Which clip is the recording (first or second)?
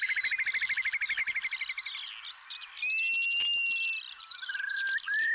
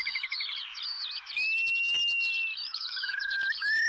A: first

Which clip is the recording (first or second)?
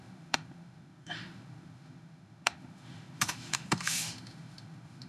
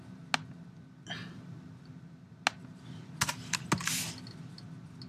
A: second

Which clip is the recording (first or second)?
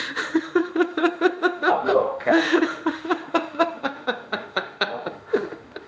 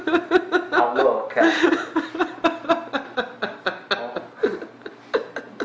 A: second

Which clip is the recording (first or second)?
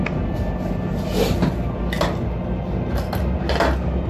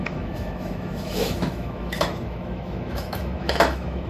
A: first